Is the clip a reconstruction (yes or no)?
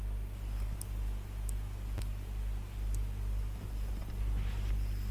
no